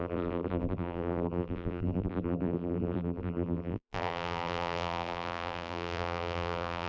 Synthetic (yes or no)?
yes